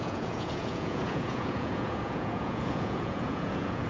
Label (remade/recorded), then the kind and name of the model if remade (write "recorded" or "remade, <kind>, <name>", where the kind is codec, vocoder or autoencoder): remade, vocoder, Vocos